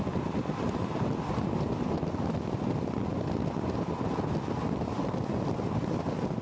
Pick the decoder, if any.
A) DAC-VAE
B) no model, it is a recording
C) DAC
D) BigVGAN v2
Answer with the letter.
B